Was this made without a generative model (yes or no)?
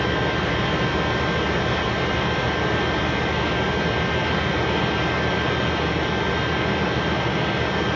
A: yes